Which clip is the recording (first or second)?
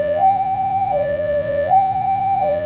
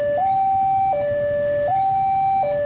second